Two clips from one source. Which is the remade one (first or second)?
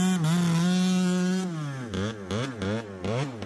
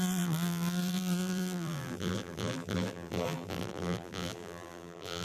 second